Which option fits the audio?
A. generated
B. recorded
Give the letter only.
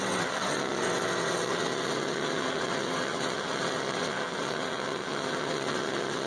A